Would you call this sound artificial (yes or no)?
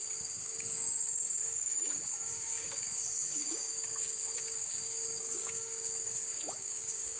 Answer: yes